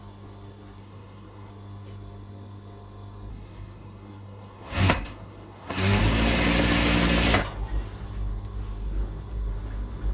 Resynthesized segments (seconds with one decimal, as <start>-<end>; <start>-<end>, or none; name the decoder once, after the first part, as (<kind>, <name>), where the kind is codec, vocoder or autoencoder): 0.8-1.5 (codec, SNAC); 3.3-6.0